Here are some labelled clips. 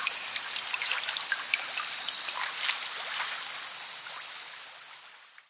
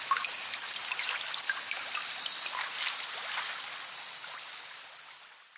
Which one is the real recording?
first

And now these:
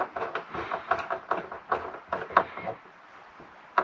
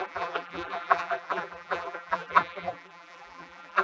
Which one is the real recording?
first